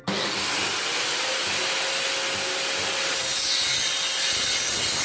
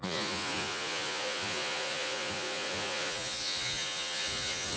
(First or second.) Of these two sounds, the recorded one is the first